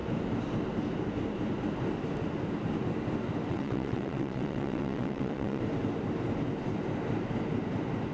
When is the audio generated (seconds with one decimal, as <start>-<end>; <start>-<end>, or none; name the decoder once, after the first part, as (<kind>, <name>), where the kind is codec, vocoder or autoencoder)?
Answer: 3.5-5.6 (vocoder, WaveNeXt)